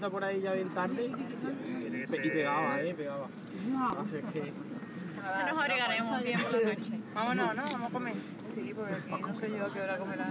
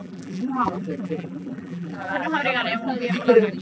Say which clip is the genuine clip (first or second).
first